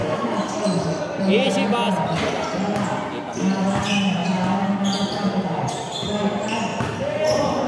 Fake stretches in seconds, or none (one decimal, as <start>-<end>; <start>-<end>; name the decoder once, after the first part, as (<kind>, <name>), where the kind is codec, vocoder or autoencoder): 0.0-1.0 (autoencoder, DAC-VAE)